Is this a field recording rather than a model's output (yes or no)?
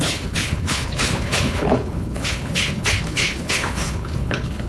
no